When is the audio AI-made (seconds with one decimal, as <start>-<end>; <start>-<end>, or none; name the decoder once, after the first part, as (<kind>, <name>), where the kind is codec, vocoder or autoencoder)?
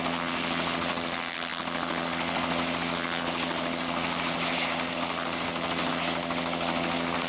none